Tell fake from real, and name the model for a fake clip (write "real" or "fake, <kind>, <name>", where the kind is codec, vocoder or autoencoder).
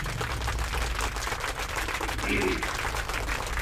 real